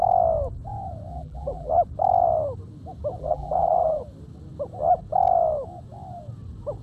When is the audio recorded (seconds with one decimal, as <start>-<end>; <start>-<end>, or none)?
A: 0.0-1.1; 1.7-3.2; 4.0-6.8

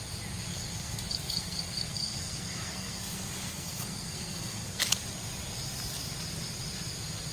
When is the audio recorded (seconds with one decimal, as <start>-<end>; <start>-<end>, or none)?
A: 0.0-0.5; 4.8-7.3

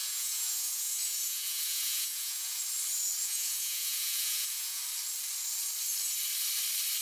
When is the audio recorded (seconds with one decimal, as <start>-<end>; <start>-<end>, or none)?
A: 2.6-3.2; 4.8-7.0

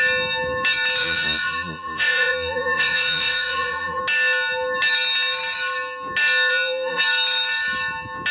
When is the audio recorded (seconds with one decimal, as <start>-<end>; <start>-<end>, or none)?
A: 0.0-1.0; 4.0-6.5; 7.0-8.3